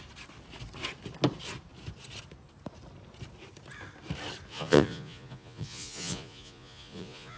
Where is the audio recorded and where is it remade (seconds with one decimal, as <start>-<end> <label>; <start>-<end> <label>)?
0.0-4.5 recorded; 4.5-7.4 remade